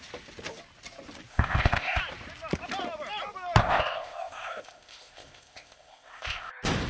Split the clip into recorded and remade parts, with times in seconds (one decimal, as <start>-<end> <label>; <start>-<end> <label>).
0.0-1.3 recorded; 1.3-2.0 remade; 2.0-3.6 recorded; 3.6-6.5 remade; 6.5-6.9 recorded